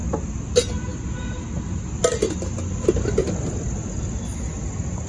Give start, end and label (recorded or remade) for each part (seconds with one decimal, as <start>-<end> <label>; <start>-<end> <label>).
0.0-5.1 recorded